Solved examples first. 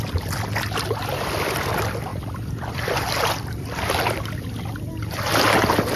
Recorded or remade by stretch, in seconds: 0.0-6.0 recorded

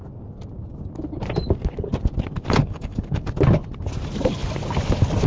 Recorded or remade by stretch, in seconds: 0.0-2.6 recorded; 2.6-3.3 remade; 3.3-5.3 recorded

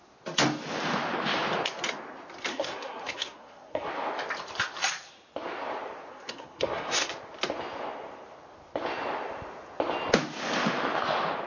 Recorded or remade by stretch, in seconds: 0.0-2.5 recorded; 2.5-3.9 remade; 3.9-6.1 recorded; 6.1-7.1 remade; 7.1-11.5 recorded

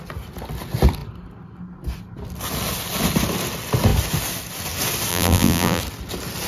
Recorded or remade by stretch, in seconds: 0.0-5.1 recorded; 5.1-5.8 remade; 5.8-6.5 recorded

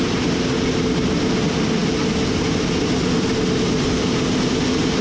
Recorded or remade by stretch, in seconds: 0.0-5.0 recorded